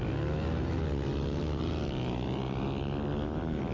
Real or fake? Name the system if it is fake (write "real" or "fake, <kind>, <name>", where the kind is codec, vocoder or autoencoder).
real